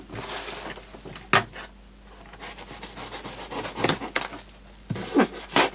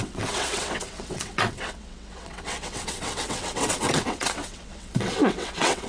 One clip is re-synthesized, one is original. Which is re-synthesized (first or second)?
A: second